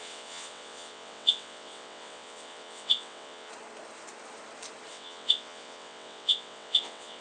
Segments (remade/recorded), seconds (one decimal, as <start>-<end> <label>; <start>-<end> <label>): 0.0-3.5 remade; 3.5-4.9 recorded; 4.9-7.2 remade